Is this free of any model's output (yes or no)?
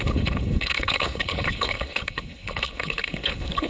no